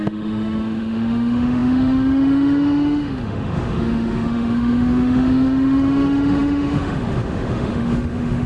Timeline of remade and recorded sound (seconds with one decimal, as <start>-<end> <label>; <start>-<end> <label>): 0.0-8.5 remade